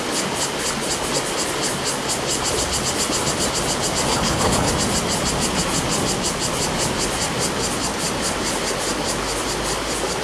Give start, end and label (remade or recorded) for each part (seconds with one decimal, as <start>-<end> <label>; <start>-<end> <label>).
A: 0.0-4.1 recorded; 4.1-4.7 remade; 4.7-10.2 recorded